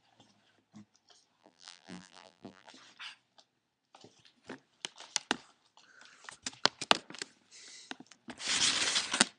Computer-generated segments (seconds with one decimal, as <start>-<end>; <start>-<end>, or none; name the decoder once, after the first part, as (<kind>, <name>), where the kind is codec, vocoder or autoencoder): 1.4-2.7 (vocoder, BigVGAN v2)